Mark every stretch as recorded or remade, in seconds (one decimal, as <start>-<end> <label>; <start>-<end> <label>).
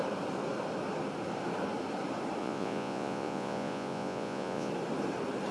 0.0-2.4 recorded; 2.4-4.7 remade; 4.7-5.5 recorded